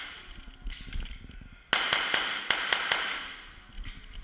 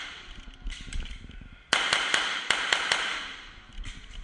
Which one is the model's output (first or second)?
second